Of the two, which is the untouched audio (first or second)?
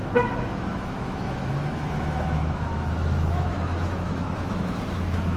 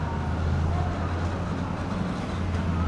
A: second